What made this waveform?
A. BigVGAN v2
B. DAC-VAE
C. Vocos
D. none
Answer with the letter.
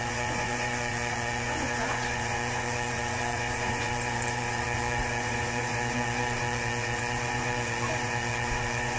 C